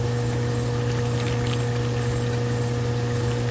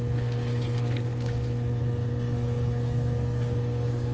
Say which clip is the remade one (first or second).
second